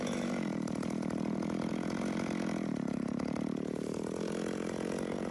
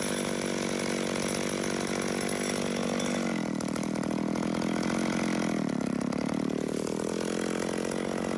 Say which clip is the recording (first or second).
second